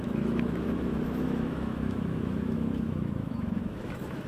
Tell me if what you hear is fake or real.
fake